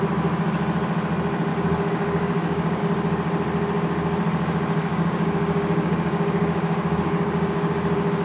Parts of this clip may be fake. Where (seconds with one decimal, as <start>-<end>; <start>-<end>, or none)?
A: 1.5-2.8; 4.8-7.7